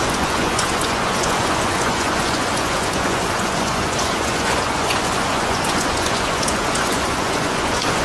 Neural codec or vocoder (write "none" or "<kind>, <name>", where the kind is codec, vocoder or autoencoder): vocoder, Vocos